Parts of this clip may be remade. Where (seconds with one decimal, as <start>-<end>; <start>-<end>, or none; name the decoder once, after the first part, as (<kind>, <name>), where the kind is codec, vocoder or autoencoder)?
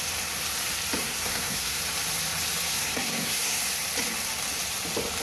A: 1.0-1.8 (codec, SNAC); 2.7-3.6